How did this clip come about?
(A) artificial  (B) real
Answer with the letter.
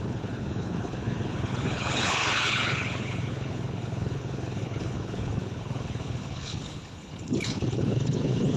A